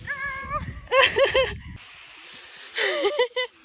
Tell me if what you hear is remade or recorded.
recorded